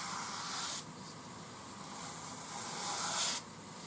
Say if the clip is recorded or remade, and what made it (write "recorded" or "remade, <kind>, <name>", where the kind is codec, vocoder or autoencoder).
recorded